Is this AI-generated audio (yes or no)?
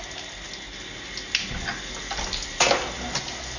no